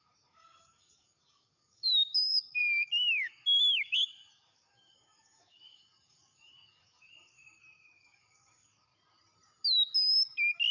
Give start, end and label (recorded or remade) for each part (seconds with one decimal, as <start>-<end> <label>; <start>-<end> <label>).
0.0-8.9 remade; 8.9-10.7 recorded